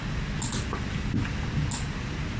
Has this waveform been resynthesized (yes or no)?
no